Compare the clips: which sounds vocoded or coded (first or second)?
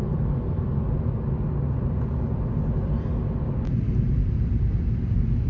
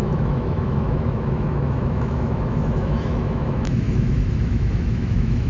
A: second